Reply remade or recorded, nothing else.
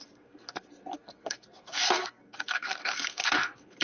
remade